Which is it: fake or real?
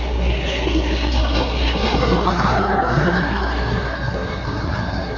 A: fake